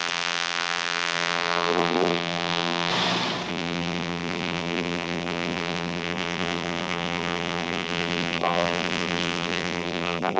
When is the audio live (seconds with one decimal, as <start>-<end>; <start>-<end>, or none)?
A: 2.9-3.5